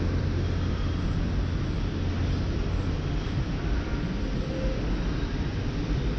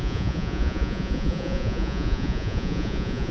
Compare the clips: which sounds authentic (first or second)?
first